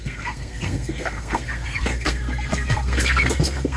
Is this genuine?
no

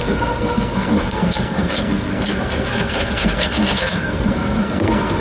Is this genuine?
no